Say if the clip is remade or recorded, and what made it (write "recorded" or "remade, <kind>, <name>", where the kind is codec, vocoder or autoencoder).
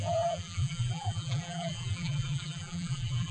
remade, vocoder, BigVGAN v2